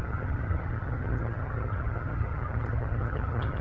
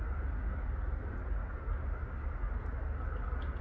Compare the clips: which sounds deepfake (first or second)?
first